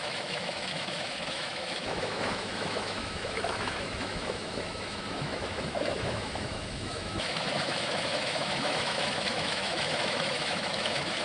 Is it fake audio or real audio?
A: fake